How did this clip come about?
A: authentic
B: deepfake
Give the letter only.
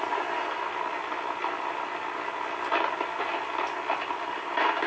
A